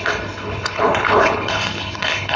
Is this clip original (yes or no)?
no